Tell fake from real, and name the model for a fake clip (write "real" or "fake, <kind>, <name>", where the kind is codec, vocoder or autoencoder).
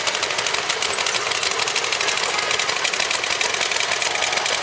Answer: real